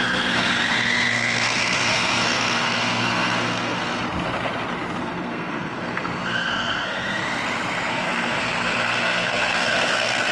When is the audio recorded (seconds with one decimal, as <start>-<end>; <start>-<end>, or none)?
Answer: 3.9-5.0; 7.2-7.9